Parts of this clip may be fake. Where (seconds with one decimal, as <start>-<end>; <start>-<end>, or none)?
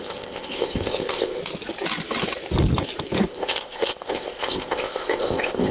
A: 0.0-1.4; 3.3-5.7